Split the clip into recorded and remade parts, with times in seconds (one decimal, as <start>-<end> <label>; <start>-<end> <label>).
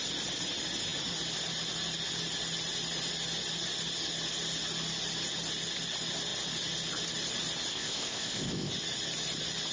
0.0-7.7 recorded; 7.7-8.7 remade; 8.7-9.7 recorded